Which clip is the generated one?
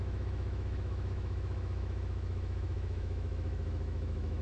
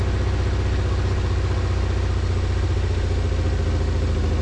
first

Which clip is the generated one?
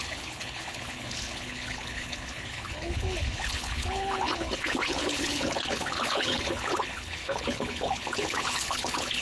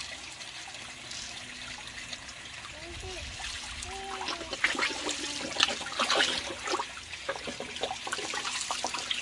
first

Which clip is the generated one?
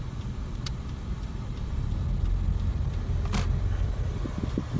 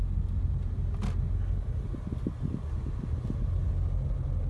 first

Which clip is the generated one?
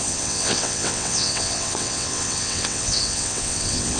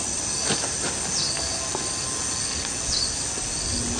first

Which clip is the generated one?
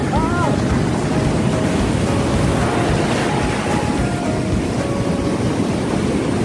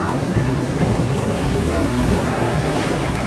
second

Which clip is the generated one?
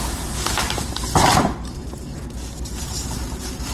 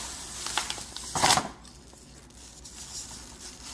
first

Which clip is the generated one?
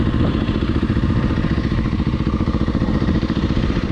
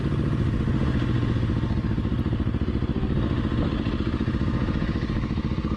first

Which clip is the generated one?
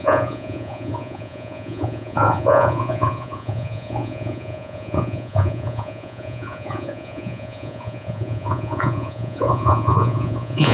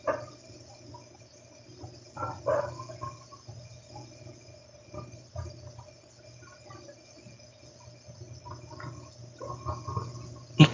first